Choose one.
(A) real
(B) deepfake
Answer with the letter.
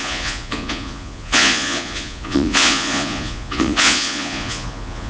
B